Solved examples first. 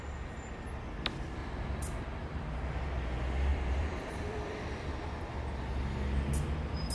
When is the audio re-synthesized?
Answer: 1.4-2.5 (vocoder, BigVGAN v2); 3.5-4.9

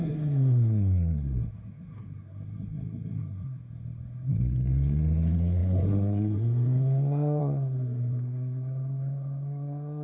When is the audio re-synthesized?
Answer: 0.0-10.0 (codec, SNAC)

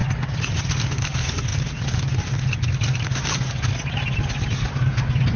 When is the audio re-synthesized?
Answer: none

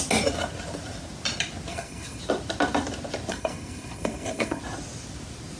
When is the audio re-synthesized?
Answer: 1.7-2.2 (codec, SNAC); 3.3-4.6

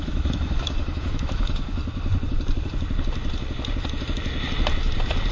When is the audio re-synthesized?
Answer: 0.0-1.8 (autoencoder, DAC-VAE)